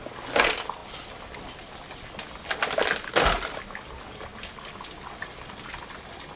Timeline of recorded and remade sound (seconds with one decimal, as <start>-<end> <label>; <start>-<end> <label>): 0.0-6.4 recorded